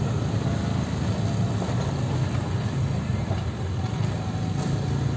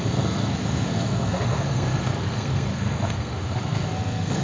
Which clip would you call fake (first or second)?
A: second